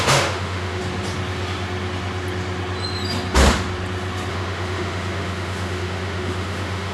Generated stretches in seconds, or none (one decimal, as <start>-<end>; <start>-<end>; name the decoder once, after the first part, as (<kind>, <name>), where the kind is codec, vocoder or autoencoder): 0.0-0.8 (autoencoder, DAC-VAE); 4.3-6.9